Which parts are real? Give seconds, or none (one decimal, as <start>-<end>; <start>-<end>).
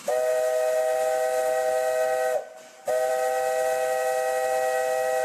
0.0-5.2